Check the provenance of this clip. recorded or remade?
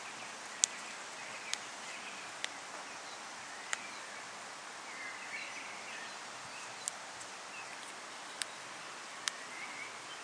recorded